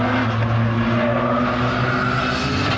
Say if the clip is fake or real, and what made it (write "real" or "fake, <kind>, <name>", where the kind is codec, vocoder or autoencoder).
real